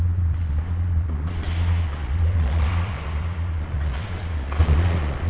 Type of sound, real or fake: fake